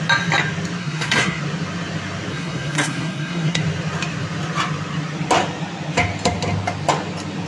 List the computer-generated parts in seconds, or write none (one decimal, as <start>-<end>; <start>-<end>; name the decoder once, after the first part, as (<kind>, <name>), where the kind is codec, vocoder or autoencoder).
0.8-1.4 (codec, SNAC); 2.3-3.6